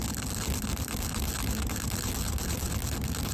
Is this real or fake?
real